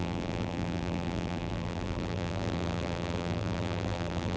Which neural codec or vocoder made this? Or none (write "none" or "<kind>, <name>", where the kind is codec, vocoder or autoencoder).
vocoder, BigVGAN v2